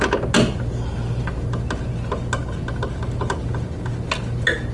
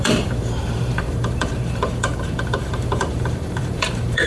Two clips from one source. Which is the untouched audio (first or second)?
first